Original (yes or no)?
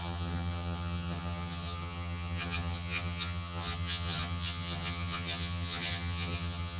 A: no